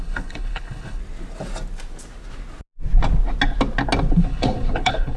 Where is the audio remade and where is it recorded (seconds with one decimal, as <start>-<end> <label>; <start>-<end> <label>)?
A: 0.0-1.0 remade; 1.0-4.1 recorded; 4.1-5.2 remade